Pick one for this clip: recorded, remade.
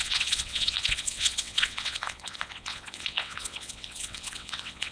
remade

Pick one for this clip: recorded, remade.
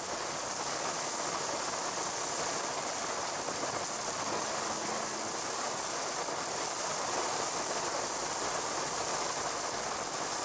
recorded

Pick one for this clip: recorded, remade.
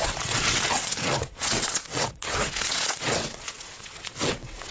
remade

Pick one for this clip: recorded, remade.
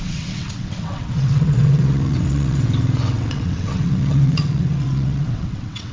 remade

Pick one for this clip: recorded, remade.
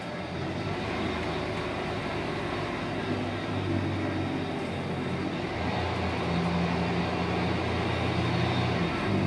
recorded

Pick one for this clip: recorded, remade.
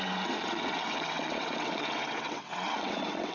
remade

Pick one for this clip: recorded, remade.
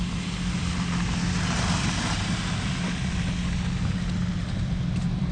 recorded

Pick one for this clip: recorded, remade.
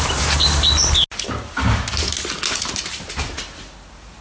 recorded